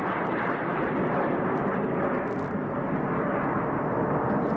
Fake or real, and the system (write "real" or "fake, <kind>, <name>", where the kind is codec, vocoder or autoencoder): real